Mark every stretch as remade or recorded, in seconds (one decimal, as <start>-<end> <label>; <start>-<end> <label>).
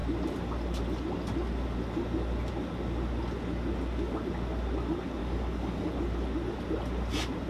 0.0-5.2 recorded; 5.2-5.9 remade; 5.9-7.5 recorded